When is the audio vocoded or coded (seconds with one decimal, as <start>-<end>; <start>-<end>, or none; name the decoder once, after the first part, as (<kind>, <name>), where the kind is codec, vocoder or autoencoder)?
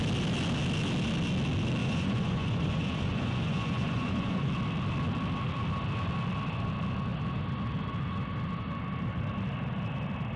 1.8-4.5 (vocoder, Vocos)